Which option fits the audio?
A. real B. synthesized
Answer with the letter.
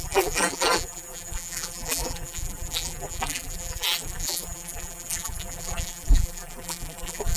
B